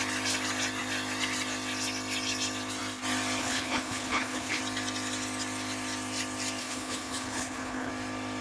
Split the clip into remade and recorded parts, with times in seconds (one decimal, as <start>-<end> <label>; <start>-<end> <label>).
0.0-3.4 recorded; 3.4-4.6 remade; 4.6-6.6 recorded; 6.6-7.9 remade; 7.9-8.4 recorded